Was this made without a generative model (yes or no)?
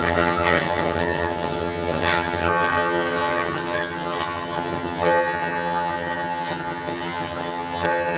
no